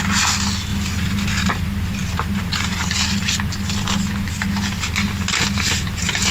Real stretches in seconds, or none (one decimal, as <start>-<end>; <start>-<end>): 0.0-6.3